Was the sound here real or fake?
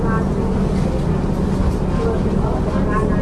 real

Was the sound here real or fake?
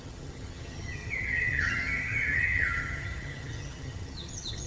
fake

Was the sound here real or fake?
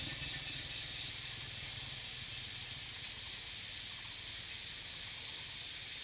real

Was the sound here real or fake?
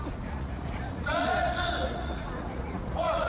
fake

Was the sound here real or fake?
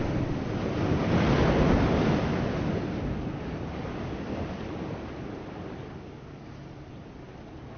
real